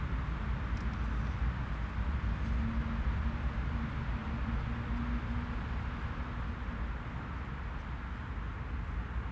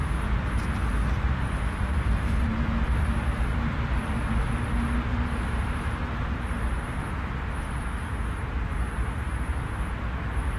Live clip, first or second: first